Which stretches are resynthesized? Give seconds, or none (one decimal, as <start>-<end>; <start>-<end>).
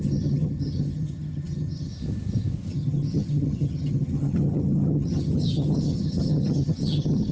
0.0-1.9; 2.7-7.3